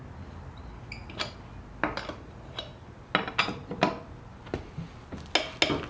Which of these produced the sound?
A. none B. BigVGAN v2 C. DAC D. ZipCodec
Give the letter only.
A